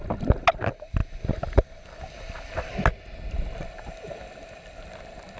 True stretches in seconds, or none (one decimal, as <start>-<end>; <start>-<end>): 0.0-1.0; 3.3-5.4